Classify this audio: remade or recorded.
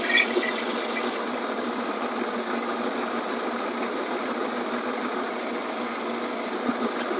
recorded